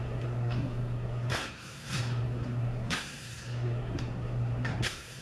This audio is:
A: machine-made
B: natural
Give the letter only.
A